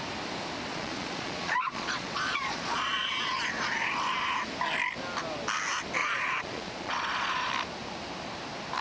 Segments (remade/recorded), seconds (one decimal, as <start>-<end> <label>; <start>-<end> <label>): 0.0-0.7 recorded; 0.7-3.1 remade; 3.1-6.0 recorded; 6.0-7.5 remade; 7.5-8.8 recorded